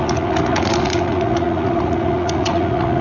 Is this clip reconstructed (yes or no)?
yes